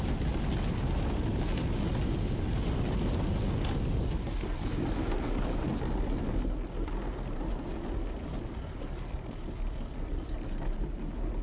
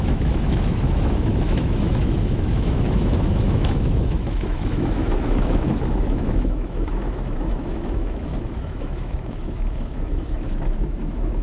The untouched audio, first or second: first